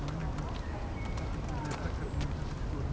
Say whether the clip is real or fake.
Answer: real